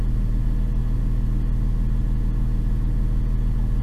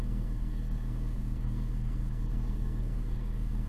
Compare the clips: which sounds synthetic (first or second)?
second